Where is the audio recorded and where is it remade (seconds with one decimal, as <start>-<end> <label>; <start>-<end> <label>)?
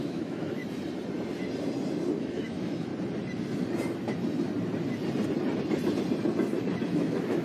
0.0-0.6 remade; 0.6-2.2 recorded; 2.2-2.9 remade; 2.9-6.9 recorded; 6.9-7.4 remade